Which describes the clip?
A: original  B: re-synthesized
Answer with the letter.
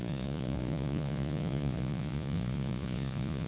B